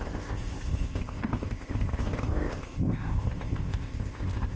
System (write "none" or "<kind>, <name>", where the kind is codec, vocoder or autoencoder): codec, ZipCodec